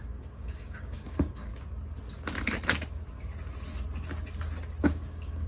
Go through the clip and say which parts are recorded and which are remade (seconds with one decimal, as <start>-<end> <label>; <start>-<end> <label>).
0.0-1.5 remade; 1.5-4.8 recorded; 4.8-5.5 remade